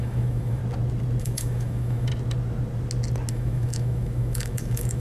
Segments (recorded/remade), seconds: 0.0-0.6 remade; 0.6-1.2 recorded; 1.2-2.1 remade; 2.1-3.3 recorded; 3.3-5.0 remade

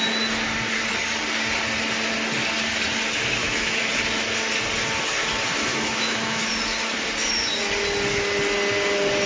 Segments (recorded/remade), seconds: 0.0-3.4 recorded; 3.4-3.9 remade; 3.9-5.7 recorded; 5.7-6.5 remade; 6.5-9.3 recorded

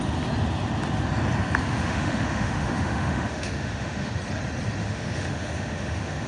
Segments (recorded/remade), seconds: 0.0-1.6 recorded; 1.6-4.1 remade; 4.1-4.8 recorded; 4.8-6.3 remade